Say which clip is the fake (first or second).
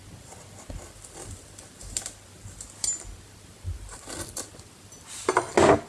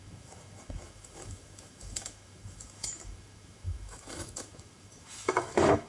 second